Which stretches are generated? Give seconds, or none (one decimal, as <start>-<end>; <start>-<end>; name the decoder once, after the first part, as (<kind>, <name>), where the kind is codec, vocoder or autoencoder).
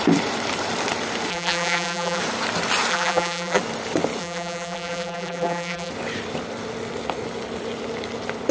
1.3-2.2 (vocoder, BigVGAN v2); 2.9-3.6; 4.2-5.9